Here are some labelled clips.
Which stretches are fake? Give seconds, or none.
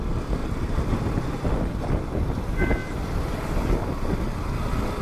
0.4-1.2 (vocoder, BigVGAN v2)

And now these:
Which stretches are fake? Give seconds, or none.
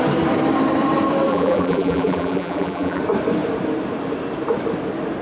1.3-3.0 (vocoder, BigVGAN v2)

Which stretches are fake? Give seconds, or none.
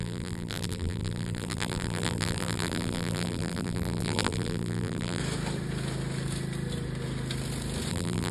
0.0-5.2 (vocoder, BigVGAN v2); 7.9-8.3